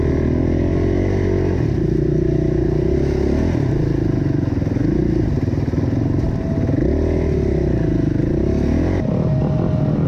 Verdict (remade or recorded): recorded